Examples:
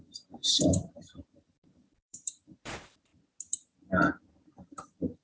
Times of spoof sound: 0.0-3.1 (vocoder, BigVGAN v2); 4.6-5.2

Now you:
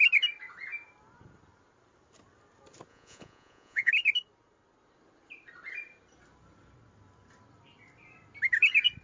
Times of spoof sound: 2.9-3.9 (vocoder, Vocos)